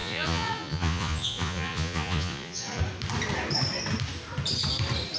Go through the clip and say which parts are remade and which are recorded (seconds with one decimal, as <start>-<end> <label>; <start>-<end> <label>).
0.0-2.8 remade; 2.8-5.2 recorded